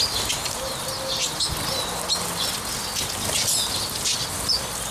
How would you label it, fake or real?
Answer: real